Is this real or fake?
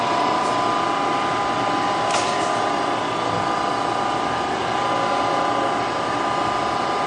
real